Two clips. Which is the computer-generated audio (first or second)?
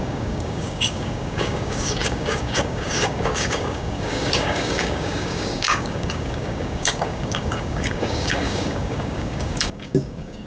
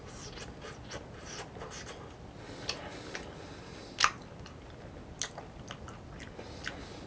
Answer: first